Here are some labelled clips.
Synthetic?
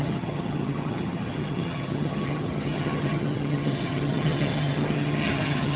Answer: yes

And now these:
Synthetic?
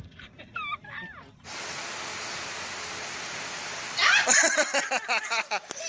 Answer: no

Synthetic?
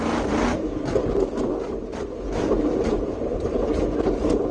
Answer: no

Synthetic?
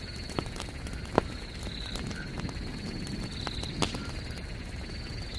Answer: no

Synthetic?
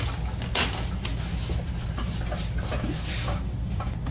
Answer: no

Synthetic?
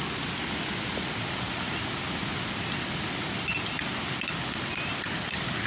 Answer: no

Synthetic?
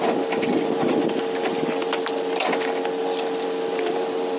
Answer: no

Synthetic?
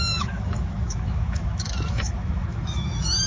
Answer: yes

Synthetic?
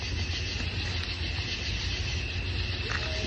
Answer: no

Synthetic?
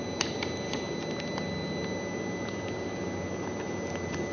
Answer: no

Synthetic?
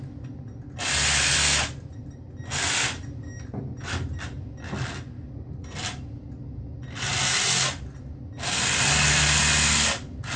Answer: no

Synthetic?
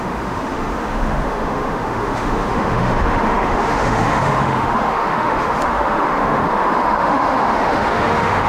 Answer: yes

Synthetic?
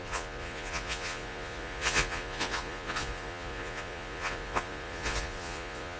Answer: yes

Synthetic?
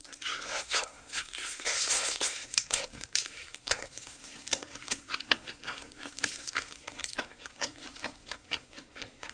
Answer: yes